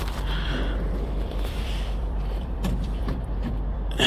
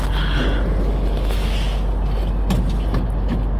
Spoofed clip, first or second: first